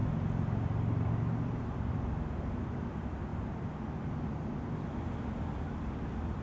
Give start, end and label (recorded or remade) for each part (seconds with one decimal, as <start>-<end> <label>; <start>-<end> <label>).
0.0-6.4 recorded